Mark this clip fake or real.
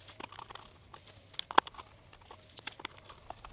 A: real